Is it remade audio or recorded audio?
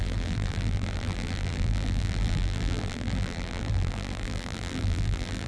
remade